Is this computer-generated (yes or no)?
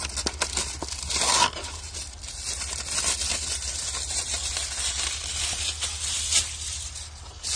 no